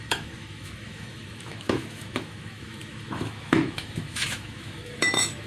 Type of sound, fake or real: fake